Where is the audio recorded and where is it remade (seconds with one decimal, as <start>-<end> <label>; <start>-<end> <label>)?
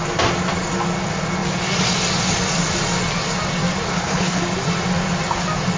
0.0-3.9 recorded; 3.9-4.4 remade; 4.4-5.8 recorded